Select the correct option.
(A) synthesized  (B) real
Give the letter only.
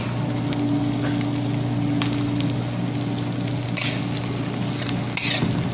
B